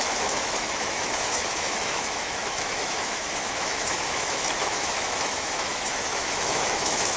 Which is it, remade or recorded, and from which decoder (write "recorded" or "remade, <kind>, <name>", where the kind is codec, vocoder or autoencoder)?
remade, autoencoder, DAC-VAE